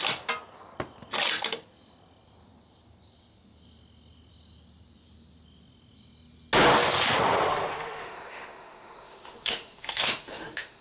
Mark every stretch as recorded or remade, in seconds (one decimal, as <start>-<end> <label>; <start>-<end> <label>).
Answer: 0.0-7.5 recorded; 7.5-10.8 remade